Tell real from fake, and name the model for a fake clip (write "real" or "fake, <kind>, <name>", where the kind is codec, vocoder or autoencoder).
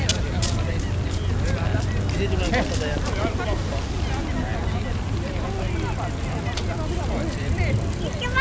real